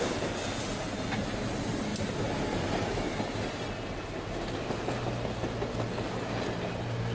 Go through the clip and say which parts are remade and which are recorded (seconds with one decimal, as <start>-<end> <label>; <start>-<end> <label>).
0.0-7.1 recorded